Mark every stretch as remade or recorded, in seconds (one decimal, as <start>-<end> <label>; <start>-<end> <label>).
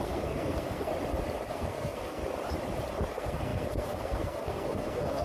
0.0-0.9 remade; 0.9-1.5 recorded; 1.5-2.2 remade; 2.2-3.1 recorded; 3.1-5.2 remade